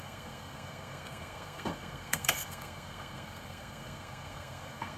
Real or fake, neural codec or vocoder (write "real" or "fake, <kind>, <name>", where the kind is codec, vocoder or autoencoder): fake, codec, SNAC